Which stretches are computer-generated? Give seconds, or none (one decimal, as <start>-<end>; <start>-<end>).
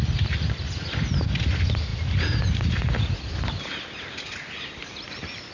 1.9-5.5